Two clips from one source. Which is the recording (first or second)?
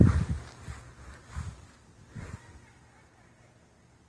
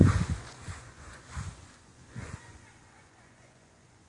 first